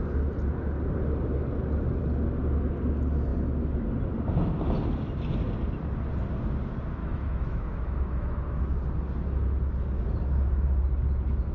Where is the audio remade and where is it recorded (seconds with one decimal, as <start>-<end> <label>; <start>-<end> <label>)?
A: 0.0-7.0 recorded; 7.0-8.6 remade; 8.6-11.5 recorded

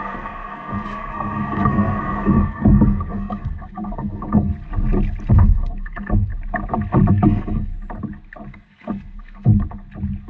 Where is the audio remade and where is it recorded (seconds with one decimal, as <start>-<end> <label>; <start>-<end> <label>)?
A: 0.0-4.5 remade; 4.5-5.3 recorded; 5.3-6.3 remade; 6.3-7.1 recorded; 7.1-7.7 remade; 7.7-8.5 recorded; 8.5-9.5 remade; 9.5-10.3 recorded

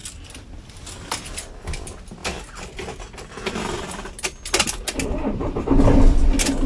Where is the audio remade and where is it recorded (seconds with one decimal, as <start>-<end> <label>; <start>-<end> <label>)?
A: 0.0-6.7 recorded